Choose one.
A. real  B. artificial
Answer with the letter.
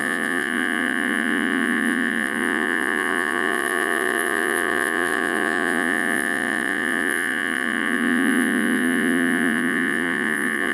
B